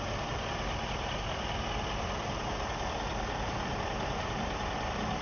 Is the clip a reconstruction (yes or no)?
no